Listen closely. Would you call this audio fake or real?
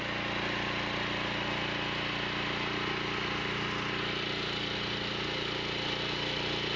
real